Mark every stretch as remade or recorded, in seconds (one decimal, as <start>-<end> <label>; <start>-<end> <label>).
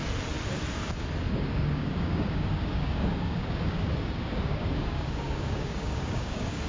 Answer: 0.0-1.3 recorded; 1.3-6.7 remade